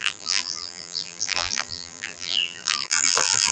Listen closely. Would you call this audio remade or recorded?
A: remade